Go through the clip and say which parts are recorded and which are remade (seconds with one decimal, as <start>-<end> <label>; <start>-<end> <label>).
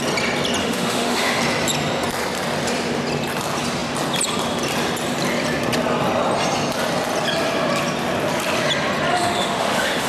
0.0-0.6 recorded; 0.6-1.4 remade; 1.4-9.1 recorded; 9.1-10.1 remade